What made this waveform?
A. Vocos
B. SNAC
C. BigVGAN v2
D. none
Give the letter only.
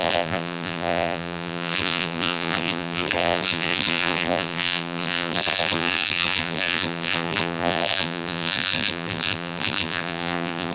C